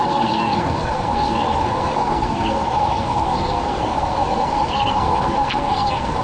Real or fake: fake